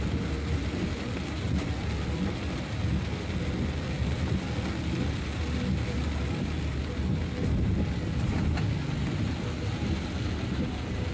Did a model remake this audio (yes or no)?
no